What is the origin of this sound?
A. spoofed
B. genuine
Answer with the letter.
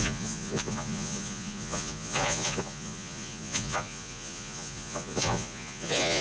A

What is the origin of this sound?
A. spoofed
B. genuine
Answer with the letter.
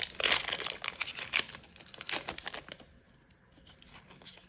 B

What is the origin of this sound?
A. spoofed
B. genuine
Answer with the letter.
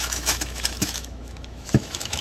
A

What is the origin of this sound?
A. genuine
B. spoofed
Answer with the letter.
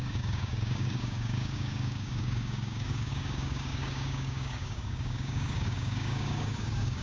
B